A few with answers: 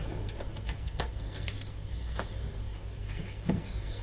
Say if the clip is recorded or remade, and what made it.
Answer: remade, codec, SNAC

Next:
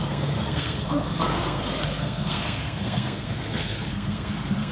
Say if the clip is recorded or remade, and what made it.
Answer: remade, codec, SNAC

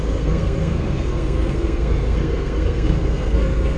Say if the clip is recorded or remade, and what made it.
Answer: remade, codec, SNAC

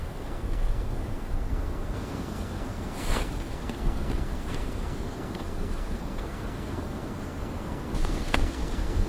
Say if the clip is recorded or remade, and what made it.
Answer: remade, codec, SNAC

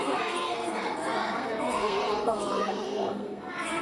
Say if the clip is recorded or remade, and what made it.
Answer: remade, codec, SNAC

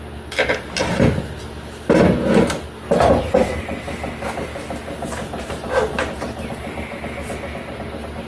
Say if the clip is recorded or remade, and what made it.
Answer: recorded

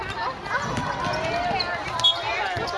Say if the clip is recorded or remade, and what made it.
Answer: recorded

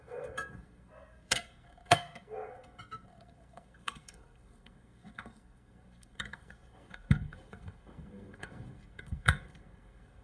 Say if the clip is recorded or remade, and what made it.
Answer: remade, codec, SNAC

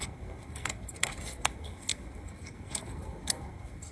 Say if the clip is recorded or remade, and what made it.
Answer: remade, codec, SNAC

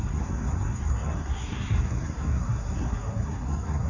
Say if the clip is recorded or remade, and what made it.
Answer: remade, codec, SNAC